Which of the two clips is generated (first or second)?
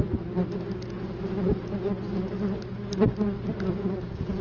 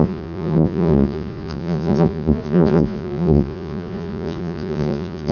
second